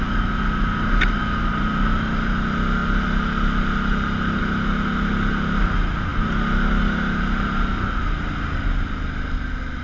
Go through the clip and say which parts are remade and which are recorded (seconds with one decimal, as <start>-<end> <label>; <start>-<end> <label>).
0.0-9.8 recorded